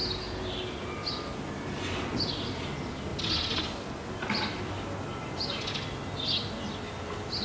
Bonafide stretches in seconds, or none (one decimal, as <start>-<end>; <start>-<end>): 0.0-7.4